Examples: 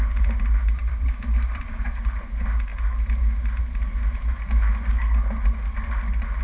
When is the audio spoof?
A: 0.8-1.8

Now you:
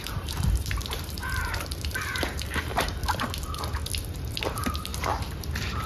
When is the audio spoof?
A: 0.0-3.0; 4.4-4.9

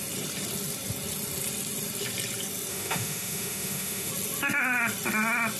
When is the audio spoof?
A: 2.7-4.1

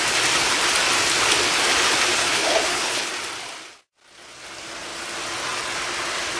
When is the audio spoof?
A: 2.2-3.1

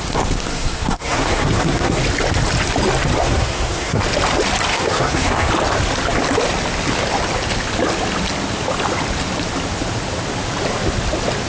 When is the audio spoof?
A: 0.5-2.0; 3.2-4.0; 4.7-5.5